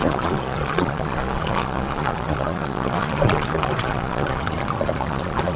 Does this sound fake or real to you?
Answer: fake